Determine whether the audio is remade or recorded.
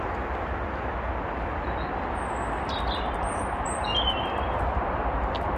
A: recorded